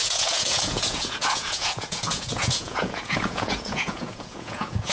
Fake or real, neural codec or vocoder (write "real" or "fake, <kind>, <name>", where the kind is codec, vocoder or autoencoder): fake, vocoder, Vocos